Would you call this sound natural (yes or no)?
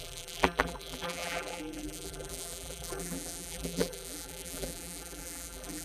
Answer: no